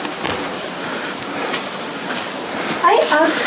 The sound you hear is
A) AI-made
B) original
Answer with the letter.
A